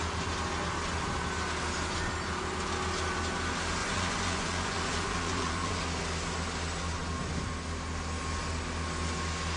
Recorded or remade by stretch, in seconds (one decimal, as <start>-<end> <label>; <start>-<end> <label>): 0.0-3.8 recorded; 3.8-5.8 remade; 5.8-9.6 recorded